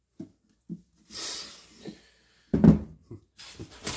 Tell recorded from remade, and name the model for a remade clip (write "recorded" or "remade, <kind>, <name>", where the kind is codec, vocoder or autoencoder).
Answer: recorded